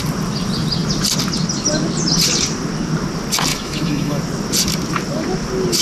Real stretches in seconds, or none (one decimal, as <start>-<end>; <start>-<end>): 0.0-3.5; 4.2-5.8